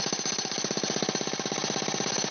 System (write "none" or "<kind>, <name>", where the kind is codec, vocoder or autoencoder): none